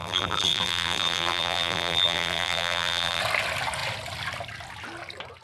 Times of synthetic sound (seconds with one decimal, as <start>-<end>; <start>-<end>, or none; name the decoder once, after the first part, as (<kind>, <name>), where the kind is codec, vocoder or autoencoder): 0.0-3.2 (vocoder, BigVGAN v2)